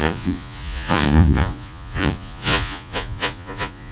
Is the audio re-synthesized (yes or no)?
yes